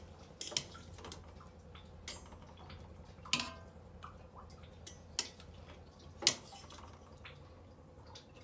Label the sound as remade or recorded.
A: recorded